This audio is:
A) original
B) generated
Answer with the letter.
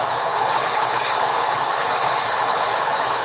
B